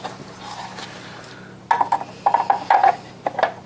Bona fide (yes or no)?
yes